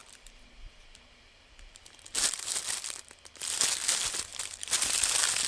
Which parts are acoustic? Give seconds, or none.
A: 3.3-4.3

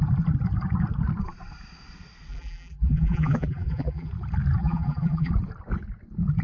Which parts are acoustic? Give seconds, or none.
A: 0.0-2.3; 4.1-4.6; 5.3-6.4

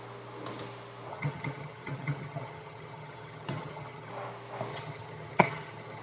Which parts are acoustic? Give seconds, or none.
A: 0.0-1.1; 4.1-4.7

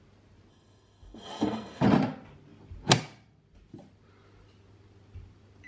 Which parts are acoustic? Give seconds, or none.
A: 0.0-0.5; 1.8-5.7

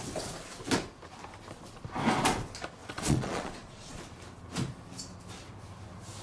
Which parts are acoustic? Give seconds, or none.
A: 0.0-2.8; 4.0-6.2